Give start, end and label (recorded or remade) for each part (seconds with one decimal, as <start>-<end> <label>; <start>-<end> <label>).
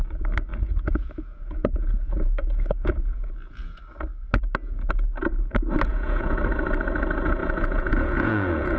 0.0-0.5 recorded; 0.5-3.8 remade; 3.8-5.9 recorded; 5.9-6.4 remade; 6.4-7.4 recorded; 7.4-8.8 remade